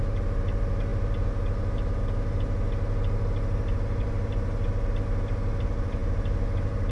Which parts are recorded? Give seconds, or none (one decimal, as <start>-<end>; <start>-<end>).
0.0-6.9